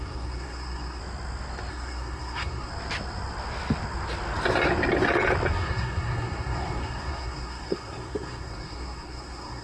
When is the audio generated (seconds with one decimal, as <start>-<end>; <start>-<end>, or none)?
0.0-1.0; 1.7-2.7; 5.5-9.6

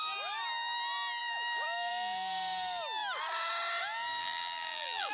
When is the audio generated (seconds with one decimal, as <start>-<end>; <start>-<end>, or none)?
4.2-5.1

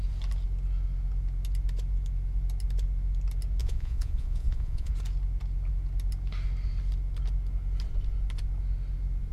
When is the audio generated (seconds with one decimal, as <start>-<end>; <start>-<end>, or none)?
3.6-4.9

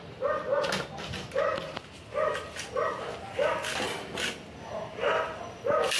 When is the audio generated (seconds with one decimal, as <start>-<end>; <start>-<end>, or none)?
none

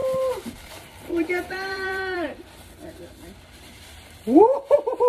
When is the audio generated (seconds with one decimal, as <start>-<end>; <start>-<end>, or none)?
0.0-5.1

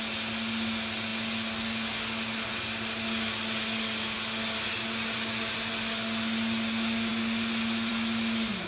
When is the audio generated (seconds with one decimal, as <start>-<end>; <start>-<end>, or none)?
none

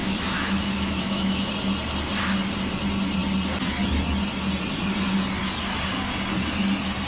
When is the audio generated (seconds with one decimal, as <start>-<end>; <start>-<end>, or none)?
0.0-1.5

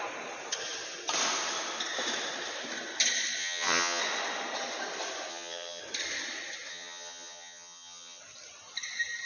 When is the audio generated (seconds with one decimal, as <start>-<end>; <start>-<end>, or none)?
3.4-4.0; 5.3-5.8; 6.7-8.2